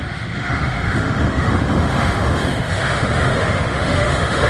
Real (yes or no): no